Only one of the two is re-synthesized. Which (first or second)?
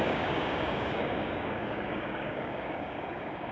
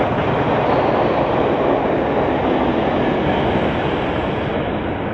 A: first